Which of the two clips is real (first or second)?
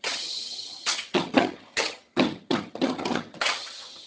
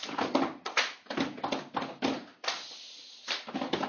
second